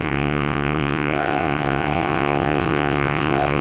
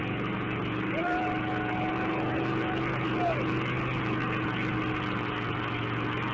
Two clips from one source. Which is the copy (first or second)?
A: first